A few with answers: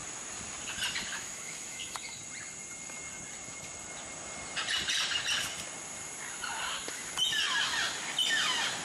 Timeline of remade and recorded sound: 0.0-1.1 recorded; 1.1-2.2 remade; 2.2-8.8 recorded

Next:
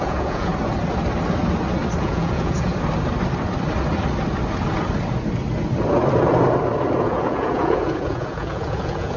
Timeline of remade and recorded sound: 0.0-0.5 remade; 0.5-2.0 recorded; 2.0-2.7 remade; 2.7-7.0 recorded; 7.0-9.2 remade